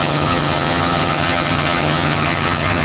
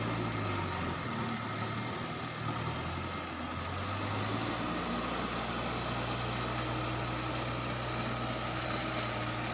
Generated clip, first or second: first